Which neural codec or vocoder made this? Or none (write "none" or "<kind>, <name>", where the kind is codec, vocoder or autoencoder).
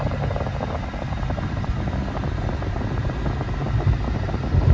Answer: none